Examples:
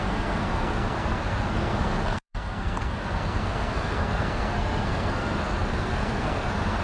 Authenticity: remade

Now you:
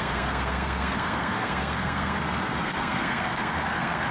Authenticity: remade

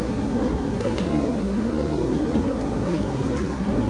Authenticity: remade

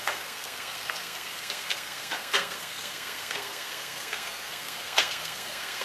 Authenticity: remade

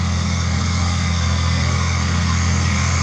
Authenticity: remade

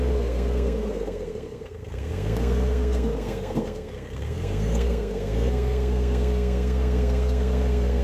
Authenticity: remade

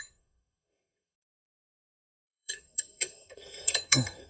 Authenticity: remade